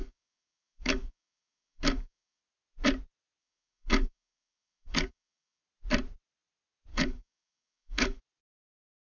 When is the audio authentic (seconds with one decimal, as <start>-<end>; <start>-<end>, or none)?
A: 2.4-3.4; 5.6-6.9; 8.2-9.0